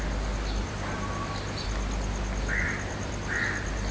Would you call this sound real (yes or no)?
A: yes